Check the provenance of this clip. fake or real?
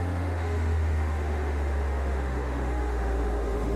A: fake